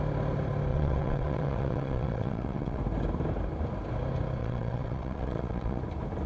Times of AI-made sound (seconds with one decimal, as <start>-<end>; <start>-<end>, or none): 0.7-2.8; 4.4-5.8